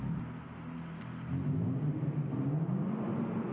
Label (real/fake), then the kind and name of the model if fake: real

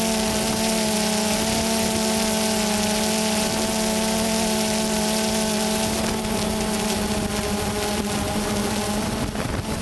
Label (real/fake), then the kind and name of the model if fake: real